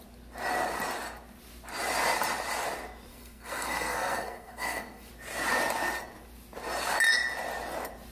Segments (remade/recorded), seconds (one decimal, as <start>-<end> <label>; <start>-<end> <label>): 0.0-3.1 recorded; 3.1-5.1 remade; 5.1-8.1 recorded